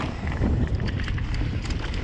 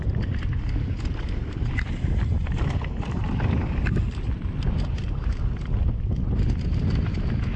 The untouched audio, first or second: second